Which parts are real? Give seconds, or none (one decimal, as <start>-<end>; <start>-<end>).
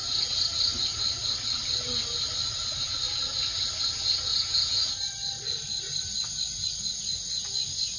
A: 0.0-4.3; 4.8-8.0